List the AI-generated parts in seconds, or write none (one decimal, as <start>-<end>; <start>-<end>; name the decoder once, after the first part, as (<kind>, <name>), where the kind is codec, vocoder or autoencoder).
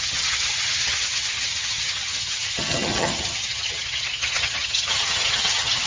0.0-5.9 (vocoder, HiFi-GAN)